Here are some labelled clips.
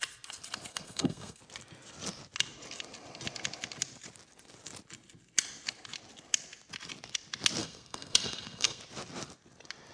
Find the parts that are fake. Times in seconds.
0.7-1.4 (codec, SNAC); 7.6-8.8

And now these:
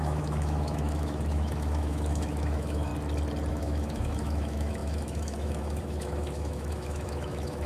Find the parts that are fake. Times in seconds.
0.0-2.9 (autoencoder, DAC-VAE); 3.5-7.7